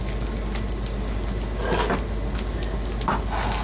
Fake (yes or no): no